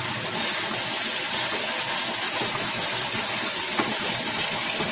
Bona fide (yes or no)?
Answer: yes